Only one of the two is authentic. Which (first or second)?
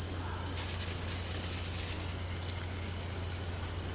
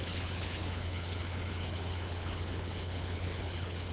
first